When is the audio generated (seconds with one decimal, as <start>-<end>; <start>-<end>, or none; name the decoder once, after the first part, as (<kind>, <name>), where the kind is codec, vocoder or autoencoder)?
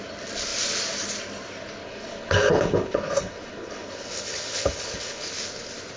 1.8-5.3 (codec, HILCodec)